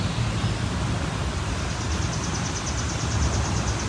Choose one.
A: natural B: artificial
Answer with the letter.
A